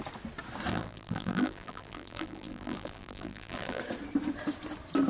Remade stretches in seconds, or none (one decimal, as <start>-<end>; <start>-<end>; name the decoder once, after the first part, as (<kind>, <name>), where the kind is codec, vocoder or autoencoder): 0.7-3.8 (vocoder, BigVGAN v2)